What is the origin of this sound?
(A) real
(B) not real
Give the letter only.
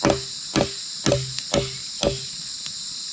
A